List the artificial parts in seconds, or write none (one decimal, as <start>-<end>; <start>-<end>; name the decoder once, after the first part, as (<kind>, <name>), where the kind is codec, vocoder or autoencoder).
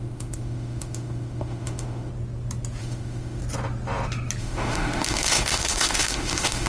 0.0-2.1 (autoencoder, DAC-VAE); 2.8-3.4; 4.4-6.7